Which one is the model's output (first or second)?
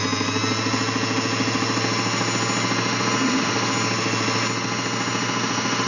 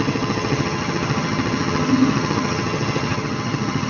second